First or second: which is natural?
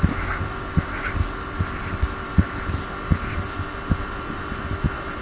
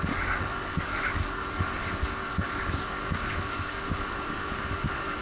first